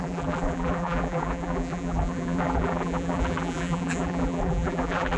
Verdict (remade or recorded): remade